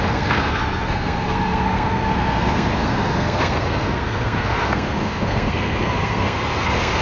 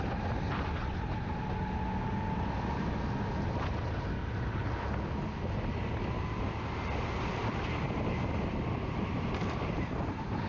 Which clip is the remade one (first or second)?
first